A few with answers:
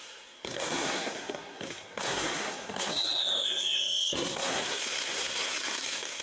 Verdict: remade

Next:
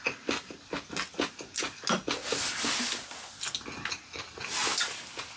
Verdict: recorded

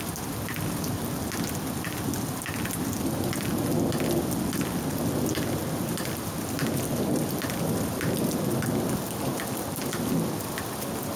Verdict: recorded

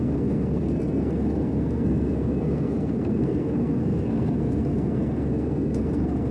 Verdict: remade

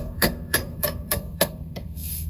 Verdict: remade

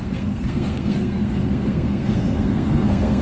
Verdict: remade